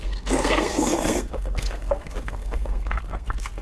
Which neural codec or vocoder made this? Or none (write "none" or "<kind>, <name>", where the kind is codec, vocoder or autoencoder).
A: codec, SNAC